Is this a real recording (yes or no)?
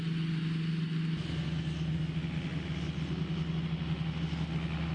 yes